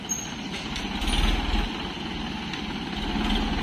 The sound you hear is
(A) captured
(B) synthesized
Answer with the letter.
A